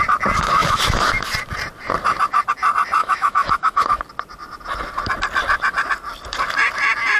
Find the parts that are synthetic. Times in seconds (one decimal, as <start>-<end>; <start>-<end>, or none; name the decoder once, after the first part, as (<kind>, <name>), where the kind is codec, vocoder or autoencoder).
0.6-1.2 (autoencoder, DAC-VAE); 3.0-4.0